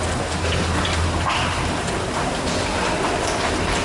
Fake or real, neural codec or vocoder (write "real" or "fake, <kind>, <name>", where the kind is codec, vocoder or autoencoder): real